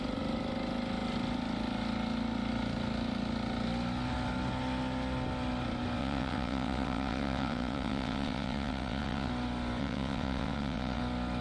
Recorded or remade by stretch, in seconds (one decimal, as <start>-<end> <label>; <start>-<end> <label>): 0.0-6.0 recorded; 6.0-9.3 remade; 9.3-9.8 recorded; 9.8-11.0 remade; 11.0-11.4 recorded